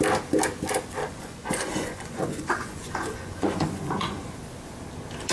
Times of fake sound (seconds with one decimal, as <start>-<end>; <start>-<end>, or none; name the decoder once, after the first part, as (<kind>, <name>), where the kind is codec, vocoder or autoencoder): 1.0-4.2 (vocoder, Vocos)